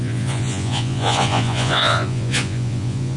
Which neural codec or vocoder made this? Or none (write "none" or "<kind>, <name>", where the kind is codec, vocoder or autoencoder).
vocoder, Vocos